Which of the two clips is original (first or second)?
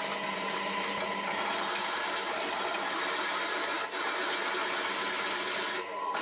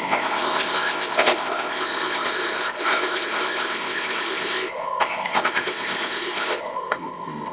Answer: first